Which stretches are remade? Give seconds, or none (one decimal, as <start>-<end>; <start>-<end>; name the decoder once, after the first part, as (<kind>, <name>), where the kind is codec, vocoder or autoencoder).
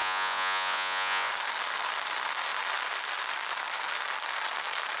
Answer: 0.0-1.3 (vocoder, Vocos)